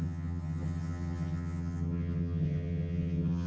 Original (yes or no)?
no